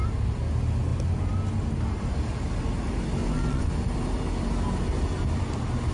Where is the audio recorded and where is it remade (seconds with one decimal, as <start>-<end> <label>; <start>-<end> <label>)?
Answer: 0.0-3.2 recorded; 3.2-3.7 remade; 3.7-5.9 recorded